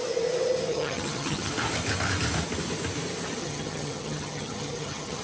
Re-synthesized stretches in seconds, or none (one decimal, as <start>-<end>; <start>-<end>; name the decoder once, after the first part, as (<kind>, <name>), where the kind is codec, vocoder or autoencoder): 0.7-1.5 (vocoder, HiFi-GAN); 3.4-5.2